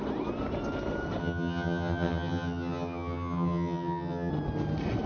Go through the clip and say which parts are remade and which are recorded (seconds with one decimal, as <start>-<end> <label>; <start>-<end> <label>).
0.0-1.2 recorded; 1.2-4.3 remade; 4.3-5.1 recorded